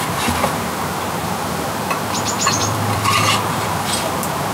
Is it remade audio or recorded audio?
remade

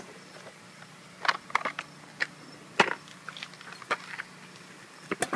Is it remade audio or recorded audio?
recorded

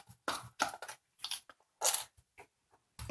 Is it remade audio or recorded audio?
recorded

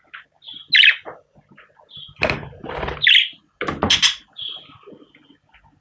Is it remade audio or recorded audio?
recorded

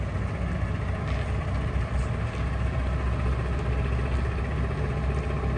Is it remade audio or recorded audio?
recorded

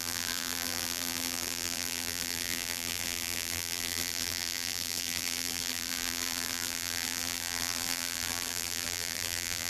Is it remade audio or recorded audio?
remade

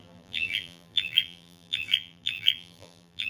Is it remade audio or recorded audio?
remade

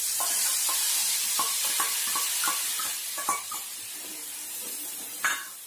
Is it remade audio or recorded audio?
remade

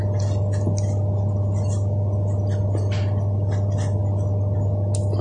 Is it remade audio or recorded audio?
recorded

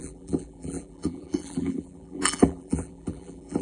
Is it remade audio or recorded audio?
remade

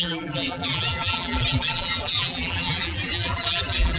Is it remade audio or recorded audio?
remade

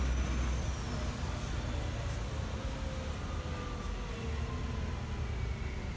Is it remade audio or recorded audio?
recorded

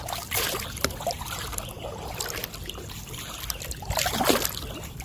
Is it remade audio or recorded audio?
recorded